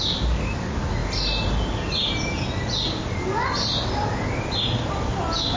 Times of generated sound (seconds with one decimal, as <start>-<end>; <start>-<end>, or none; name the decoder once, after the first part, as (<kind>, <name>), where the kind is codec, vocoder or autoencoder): none